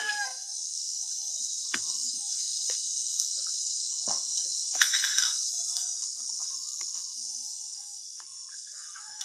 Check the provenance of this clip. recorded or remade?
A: remade